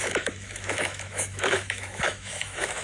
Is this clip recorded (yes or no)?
no